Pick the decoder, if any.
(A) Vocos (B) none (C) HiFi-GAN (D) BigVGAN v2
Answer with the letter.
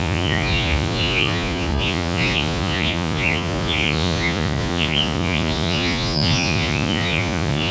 A